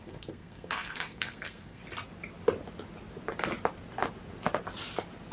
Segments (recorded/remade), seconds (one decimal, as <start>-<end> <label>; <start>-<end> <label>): 0.0-1.8 remade; 1.8-5.3 recorded